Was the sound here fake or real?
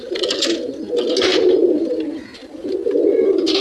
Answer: real